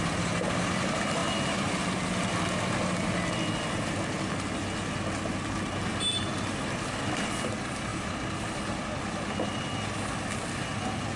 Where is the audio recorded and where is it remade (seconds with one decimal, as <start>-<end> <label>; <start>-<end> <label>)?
0.0-11.2 recorded